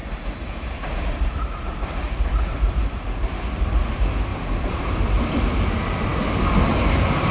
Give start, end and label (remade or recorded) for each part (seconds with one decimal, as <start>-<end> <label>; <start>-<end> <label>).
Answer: 0.0-3.8 remade; 3.8-4.3 recorded; 4.3-5.0 remade; 5.0-7.3 recorded